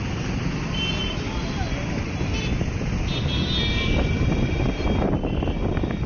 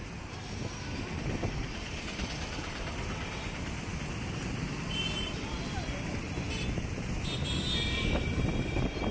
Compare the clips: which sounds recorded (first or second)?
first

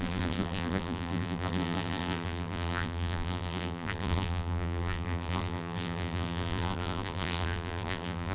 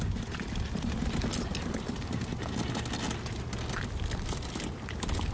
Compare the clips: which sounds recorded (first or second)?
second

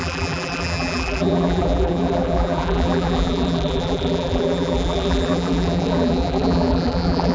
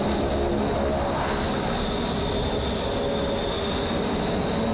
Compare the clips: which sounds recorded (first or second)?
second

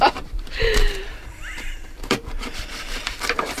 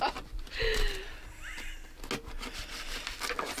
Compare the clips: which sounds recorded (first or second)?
second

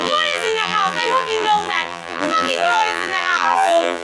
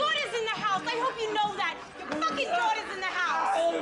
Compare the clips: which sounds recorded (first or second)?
second